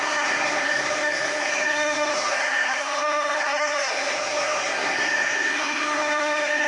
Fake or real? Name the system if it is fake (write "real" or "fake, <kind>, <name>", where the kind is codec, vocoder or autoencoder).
fake, codec, SNAC